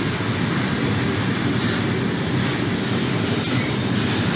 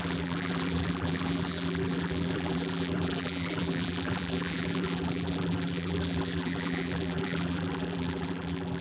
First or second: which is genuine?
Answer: first